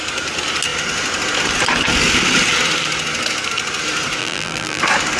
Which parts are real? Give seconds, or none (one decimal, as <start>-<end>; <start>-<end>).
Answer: 0.0-4.2; 4.8-5.2